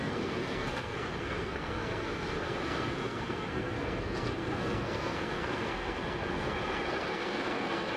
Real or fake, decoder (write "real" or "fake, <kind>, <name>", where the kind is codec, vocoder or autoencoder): fake, codec, SNAC